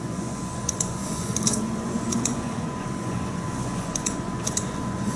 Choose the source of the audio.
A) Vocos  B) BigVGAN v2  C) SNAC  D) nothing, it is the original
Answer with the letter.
A